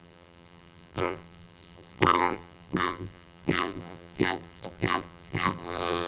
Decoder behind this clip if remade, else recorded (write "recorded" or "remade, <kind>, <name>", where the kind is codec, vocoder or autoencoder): remade, vocoder, BigVGAN v2